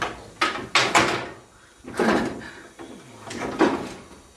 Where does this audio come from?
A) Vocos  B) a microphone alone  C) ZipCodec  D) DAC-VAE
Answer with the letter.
B